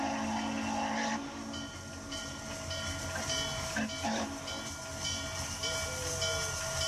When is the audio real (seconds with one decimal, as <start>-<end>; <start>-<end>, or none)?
0.0-6.9